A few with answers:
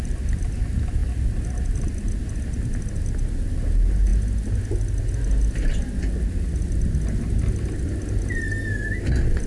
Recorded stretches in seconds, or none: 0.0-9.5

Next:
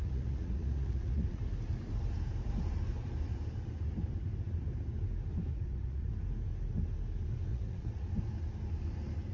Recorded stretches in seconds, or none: 1.4-5.5; 6.1-7.5; 8.1-9.3